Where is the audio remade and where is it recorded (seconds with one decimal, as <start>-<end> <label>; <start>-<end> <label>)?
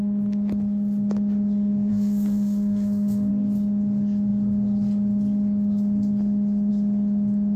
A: 0.0-1.9 recorded; 1.9-3.3 remade; 3.3-7.6 recorded